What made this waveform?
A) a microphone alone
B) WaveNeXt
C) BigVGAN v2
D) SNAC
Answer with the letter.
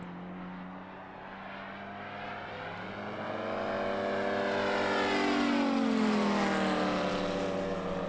A